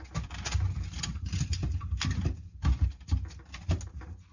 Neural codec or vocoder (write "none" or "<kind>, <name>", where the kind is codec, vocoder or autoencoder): none